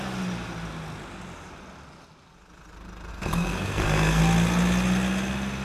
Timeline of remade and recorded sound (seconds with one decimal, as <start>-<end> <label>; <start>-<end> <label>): 0.0-3.1 recorded; 3.1-4.2 remade; 4.2-5.6 recorded